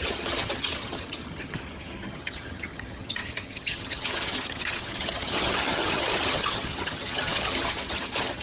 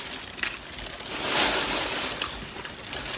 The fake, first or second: first